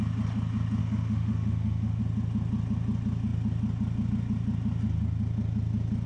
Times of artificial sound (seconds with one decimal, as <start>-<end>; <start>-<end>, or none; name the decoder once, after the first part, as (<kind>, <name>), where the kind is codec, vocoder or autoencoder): 0.8-2.0 (autoencoder, DAC-VAE)